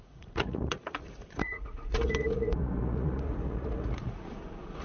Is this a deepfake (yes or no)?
yes